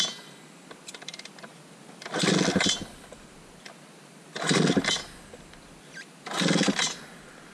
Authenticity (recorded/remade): recorded